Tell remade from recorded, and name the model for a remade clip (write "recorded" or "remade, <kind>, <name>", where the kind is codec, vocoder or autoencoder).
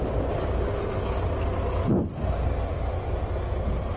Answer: recorded